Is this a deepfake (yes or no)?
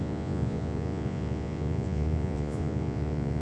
yes